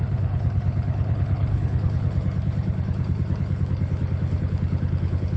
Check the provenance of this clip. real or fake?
fake